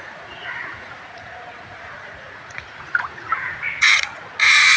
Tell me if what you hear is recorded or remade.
remade